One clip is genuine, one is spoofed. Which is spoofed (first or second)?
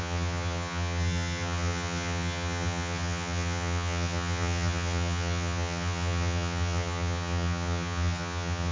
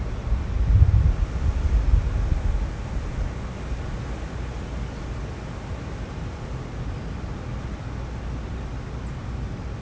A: first